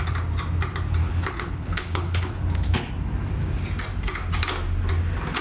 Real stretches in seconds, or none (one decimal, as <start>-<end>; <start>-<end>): 0.0-1.0; 2.9-5.4